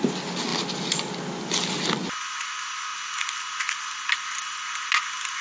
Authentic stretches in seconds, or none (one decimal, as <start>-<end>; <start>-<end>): 0.0-5.4